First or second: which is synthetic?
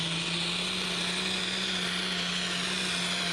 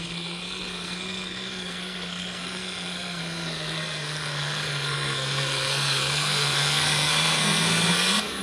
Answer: second